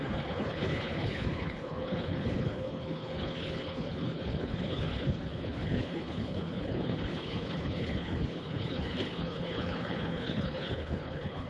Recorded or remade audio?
remade